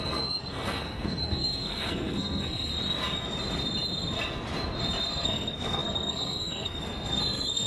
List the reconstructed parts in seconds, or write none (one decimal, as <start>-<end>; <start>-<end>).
0.0-2.7; 5.1-7.7